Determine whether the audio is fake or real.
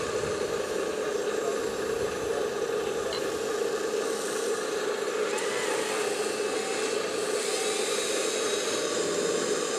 real